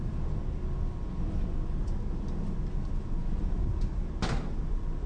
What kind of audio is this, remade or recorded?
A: recorded